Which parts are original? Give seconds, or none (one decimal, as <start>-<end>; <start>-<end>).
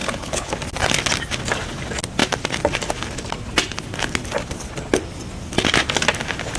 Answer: 0.5-6.6